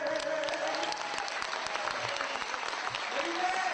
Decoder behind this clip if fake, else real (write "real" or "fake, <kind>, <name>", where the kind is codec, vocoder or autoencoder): real